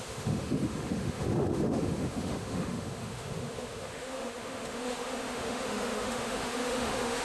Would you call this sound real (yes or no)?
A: no